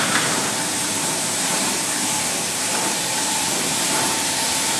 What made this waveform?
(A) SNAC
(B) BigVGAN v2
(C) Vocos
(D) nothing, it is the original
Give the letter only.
B